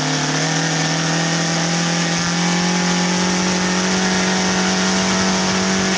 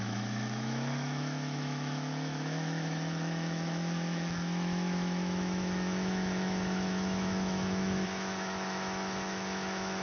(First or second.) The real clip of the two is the first